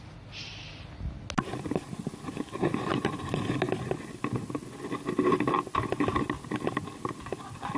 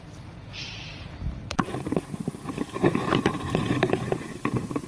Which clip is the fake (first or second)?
second